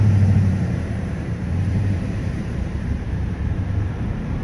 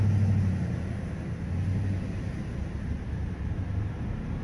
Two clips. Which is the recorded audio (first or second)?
second